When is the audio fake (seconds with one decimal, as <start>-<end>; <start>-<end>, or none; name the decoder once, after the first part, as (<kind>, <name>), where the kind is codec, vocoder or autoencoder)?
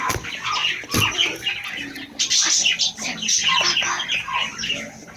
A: none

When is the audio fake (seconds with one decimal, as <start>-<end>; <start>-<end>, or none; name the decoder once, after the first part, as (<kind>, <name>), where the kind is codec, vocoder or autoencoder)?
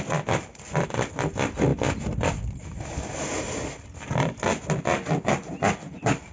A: none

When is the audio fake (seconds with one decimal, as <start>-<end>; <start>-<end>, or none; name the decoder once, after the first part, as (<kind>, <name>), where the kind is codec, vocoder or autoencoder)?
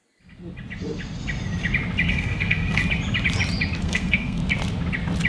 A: 2.1-2.8 (codec, SNAC); 3.8-4.4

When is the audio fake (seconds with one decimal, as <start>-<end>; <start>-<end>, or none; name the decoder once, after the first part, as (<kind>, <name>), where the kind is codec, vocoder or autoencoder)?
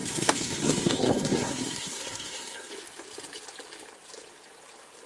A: 0.0-2.7 (codec, SNAC)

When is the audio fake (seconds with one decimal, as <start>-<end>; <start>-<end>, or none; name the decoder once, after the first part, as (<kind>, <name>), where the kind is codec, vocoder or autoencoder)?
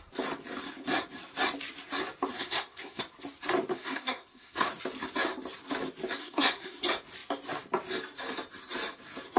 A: 2.3-3.0 (codec, SNAC); 3.7-4.7; 6.2-6.8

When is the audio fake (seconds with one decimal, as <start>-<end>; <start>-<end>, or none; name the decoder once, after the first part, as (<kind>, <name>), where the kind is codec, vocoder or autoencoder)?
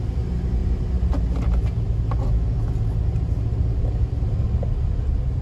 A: none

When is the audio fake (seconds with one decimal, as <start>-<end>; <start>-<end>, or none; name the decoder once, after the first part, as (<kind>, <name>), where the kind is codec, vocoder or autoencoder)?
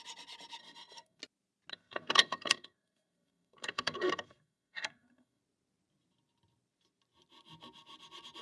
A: 0.6-1.2 (codec, SNAC); 1.7-5.4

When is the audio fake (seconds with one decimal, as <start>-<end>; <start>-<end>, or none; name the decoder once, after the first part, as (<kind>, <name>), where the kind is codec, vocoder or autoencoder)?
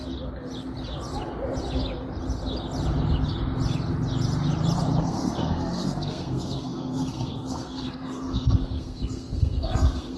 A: 5.0-10.2 (codec, SNAC)